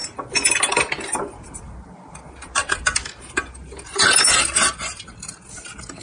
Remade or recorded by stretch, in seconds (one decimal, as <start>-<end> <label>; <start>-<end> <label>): 0.0-6.0 recorded